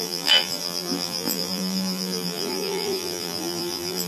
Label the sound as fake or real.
fake